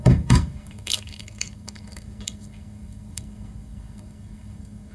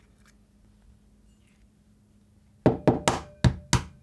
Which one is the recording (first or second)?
second